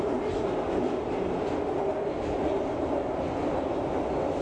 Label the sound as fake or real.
real